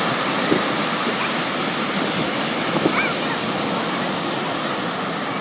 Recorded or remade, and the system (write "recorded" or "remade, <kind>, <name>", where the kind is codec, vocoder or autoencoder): recorded